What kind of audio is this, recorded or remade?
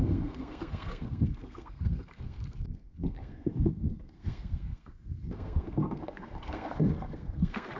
remade